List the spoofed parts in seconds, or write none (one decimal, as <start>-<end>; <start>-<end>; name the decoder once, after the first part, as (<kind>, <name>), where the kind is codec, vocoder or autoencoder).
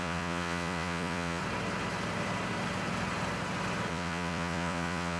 0.0-1.4 (vocoder, Vocos); 3.9-5.2